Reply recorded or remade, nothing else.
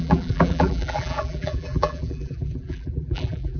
remade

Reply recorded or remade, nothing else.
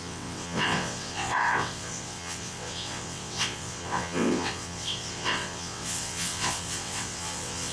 remade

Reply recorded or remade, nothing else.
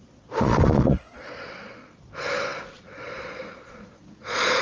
remade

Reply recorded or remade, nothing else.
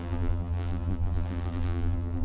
remade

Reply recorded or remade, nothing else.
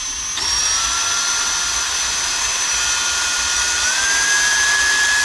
recorded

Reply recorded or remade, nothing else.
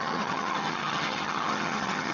remade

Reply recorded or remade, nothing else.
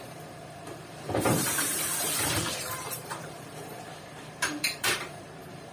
remade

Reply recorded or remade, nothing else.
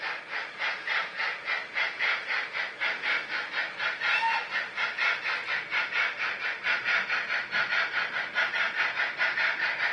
recorded